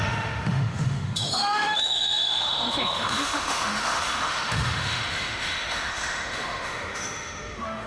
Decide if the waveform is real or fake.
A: fake